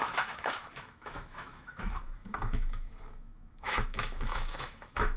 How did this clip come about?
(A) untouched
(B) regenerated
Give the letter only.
B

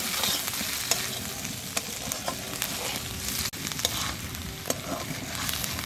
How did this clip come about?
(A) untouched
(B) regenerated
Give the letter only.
A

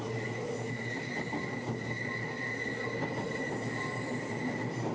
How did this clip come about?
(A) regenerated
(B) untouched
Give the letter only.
B